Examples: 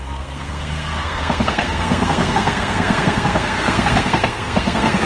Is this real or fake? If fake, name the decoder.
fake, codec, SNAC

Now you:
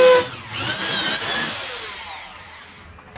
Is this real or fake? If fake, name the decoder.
real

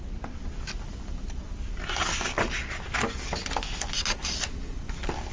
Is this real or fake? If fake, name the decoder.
real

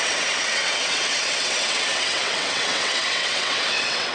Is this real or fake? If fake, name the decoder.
fake, vocoder, WaveNeXt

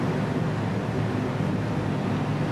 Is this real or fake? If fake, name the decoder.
real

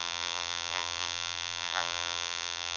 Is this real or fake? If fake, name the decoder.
fake, vocoder, BigVGAN v2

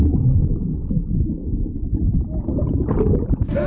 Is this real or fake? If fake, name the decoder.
real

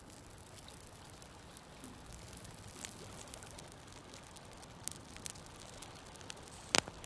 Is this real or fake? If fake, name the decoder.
real